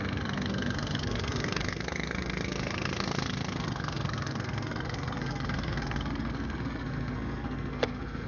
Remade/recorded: remade